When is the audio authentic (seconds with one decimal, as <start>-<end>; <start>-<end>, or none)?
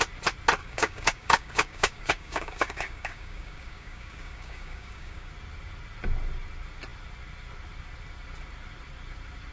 0.0-0.6; 5.3-9.5